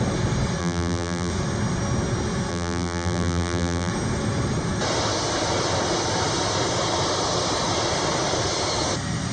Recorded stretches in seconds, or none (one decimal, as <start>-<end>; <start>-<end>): 0.0-0.6; 1.3-2.5; 3.9-9.3

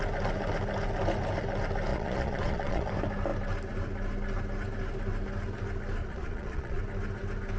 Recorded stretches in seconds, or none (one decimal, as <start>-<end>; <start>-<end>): 0.0-1.9; 2.9-6.0; 6.8-7.6